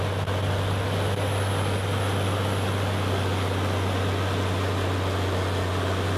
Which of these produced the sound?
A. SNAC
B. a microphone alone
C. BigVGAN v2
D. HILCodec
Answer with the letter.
B